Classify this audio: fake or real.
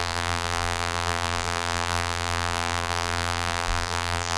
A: fake